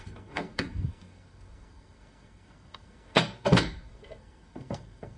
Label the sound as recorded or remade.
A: remade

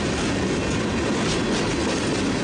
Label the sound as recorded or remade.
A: recorded